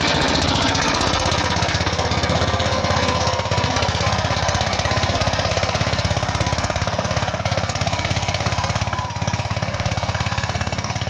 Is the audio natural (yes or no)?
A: no